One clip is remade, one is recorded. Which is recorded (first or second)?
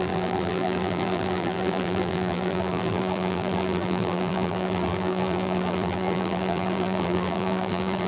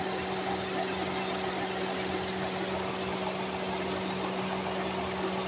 second